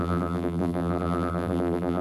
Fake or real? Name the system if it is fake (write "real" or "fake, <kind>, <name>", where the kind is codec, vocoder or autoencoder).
fake, vocoder, BigVGAN v2